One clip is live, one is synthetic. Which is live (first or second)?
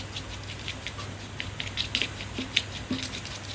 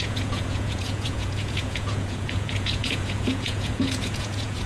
first